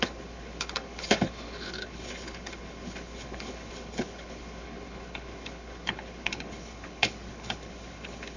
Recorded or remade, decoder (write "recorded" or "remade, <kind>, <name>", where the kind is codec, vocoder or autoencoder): remade, codec, HILCodec